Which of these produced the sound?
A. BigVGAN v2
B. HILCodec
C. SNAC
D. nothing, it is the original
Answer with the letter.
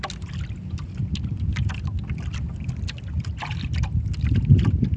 D